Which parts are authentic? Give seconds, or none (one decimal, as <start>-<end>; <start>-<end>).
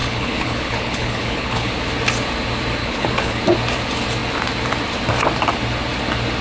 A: 1.7-2.8; 3.4-6.4